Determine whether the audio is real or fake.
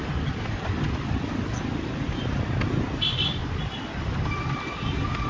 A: real